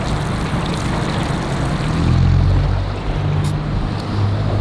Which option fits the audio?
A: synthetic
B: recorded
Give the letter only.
B